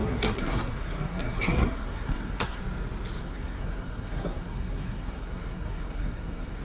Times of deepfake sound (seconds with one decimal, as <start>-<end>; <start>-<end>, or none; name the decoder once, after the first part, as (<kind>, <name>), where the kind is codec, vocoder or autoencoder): 0.0-2.6 (codec, SNAC); 3.2-6.6